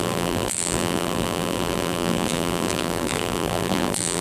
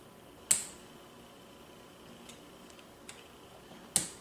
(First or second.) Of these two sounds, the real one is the second